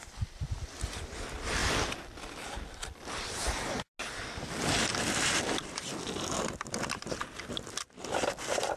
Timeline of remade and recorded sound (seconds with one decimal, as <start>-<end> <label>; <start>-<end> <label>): 0.0-8.8 recorded